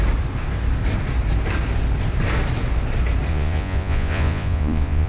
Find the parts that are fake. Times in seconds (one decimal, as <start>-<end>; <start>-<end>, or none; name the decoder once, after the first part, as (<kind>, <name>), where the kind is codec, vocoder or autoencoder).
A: 3.3-5.1 (vocoder, Vocos)